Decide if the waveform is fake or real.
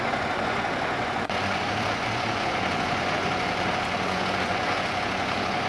fake